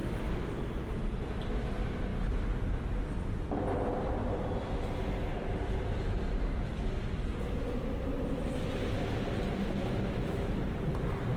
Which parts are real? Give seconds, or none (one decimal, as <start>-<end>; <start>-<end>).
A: 0.0-9.8; 10.5-11.4